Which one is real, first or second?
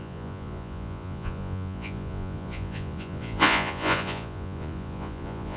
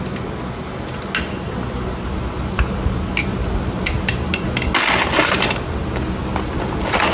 second